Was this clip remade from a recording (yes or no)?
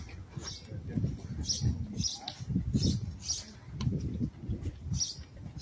no